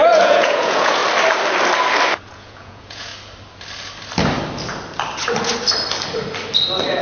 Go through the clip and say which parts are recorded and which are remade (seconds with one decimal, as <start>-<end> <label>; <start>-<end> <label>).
0.0-1.0 remade; 1.0-2.3 recorded; 2.3-3.1 remade; 3.1-7.0 recorded